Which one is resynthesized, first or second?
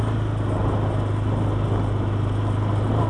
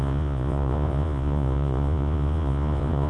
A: second